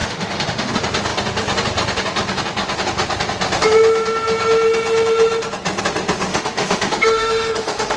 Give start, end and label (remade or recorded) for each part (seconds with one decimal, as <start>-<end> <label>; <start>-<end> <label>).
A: 0.0-0.7 remade; 0.7-6.3 recorded; 6.3-8.0 remade